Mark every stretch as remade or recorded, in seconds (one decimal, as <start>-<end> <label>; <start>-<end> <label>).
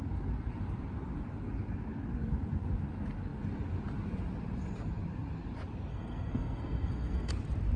0.0-5.9 recorded; 5.9-7.3 remade; 7.3-7.8 recorded